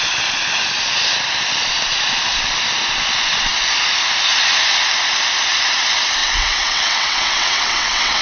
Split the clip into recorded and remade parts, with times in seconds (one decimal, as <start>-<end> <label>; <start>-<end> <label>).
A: 0.0-6.2 recorded; 6.2-8.2 remade